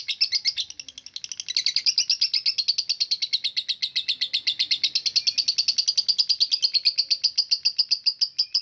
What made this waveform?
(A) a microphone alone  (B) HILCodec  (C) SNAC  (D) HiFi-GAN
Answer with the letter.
A